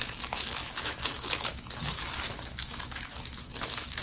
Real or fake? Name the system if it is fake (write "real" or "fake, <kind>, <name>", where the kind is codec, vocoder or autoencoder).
fake, autoencoder, DAC-VAE